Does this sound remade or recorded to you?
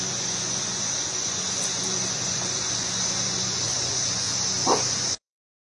remade